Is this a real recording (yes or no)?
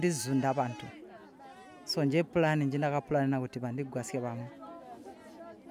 yes